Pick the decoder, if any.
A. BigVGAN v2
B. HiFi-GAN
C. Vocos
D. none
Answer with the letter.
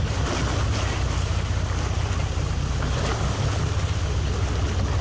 D